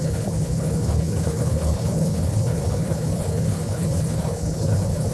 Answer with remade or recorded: remade